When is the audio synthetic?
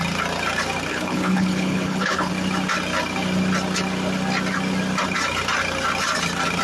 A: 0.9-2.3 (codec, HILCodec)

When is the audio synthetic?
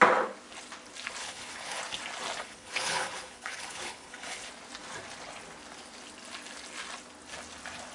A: 1.2-1.8 (codec, HILCodec); 2.4-4.5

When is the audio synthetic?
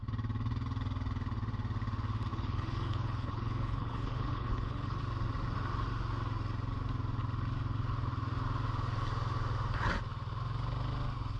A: 2.3-5.0 (codec, HILCodec)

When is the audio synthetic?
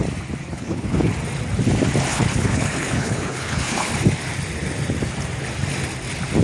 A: 0.4-1.1 (codec, HILCodec); 2.1-3.9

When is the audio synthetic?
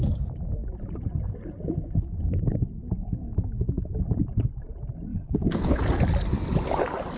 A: 5.1-5.8 (codec, HILCodec)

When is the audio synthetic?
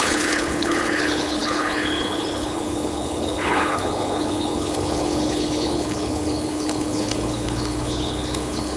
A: 0.0-8.8 (codec, HILCodec)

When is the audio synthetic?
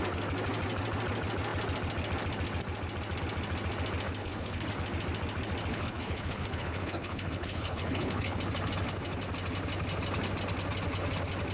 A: 4.2-4.7 (codec, HILCodec); 5.7-8.4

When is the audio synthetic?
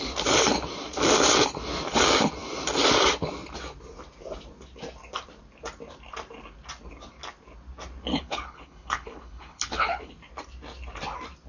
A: 8.1-10.1 (codec, HILCodec)